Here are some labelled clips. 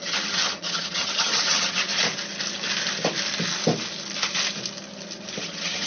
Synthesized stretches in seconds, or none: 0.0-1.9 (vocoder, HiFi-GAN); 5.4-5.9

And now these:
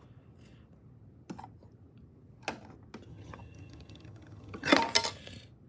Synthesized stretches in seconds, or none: 3.1-4.7 (vocoder, HiFi-GAN)

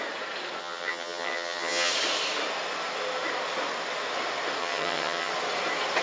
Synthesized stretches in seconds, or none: 0.6-1.9 (vocoder, HiFi-GAN); 4.6-5.3

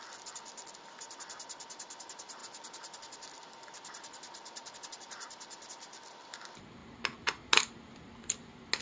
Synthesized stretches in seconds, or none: none

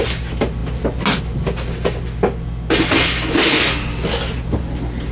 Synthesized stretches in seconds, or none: none

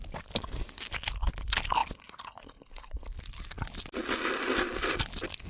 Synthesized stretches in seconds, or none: none

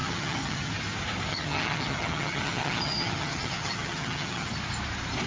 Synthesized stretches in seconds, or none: 0.0-0.7 (vocoder, HiFi-GAN); 1.3-4.5

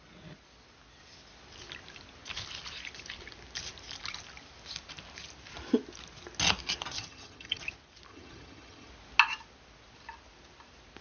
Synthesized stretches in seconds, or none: 7.0-7.6 (vocoder, HiFi-GAN); 8.1-8.9